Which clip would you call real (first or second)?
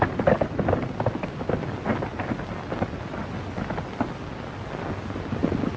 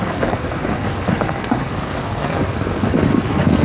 first